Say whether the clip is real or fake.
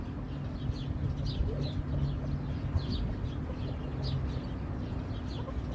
real